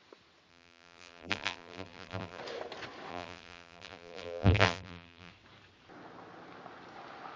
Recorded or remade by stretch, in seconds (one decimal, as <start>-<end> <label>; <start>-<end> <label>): 0.0-0.5 recorded; 0.5-2.4 remade; 2.4-3.1 recorded; 3.1-5.3 remade; 5.3-7.4 recorded